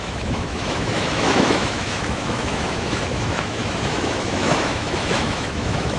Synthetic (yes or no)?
yes